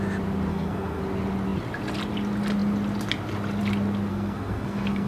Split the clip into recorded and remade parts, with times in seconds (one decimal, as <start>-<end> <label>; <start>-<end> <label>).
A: 0.0-0.5 recorded; 0.5-1.0 remade; 1.0-4.1 recorded; 4.1-5.1 remade